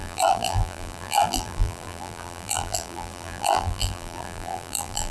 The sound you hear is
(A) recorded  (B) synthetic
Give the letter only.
B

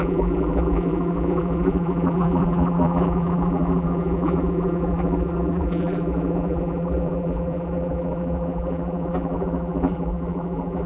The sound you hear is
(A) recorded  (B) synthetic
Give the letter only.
B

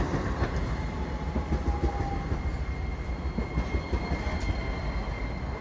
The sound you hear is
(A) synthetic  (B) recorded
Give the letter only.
B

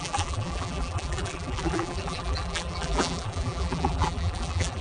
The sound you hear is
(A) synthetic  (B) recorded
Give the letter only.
A